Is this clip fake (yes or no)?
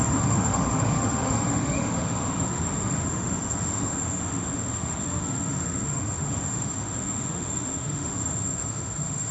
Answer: yes